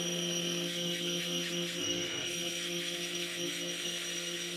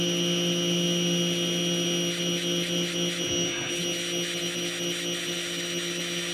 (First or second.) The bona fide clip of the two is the second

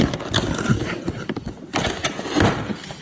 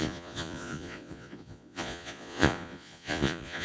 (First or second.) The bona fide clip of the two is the first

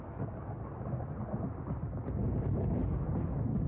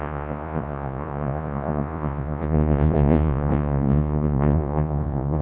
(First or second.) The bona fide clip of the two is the first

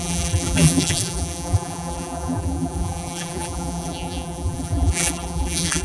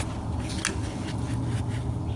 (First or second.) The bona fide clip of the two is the second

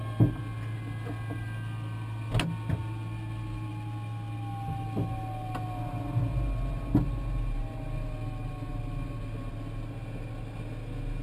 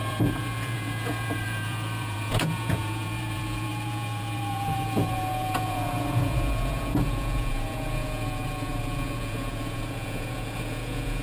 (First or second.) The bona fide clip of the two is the first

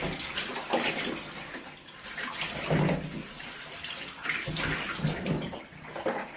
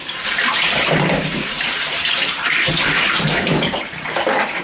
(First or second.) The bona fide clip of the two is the first